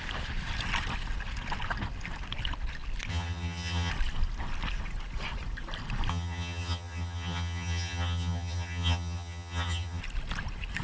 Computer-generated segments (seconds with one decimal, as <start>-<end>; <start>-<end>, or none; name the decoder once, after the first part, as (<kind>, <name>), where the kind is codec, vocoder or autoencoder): 3.1-3.9 (vocoder, HiFi-GAN); 6.1-10.0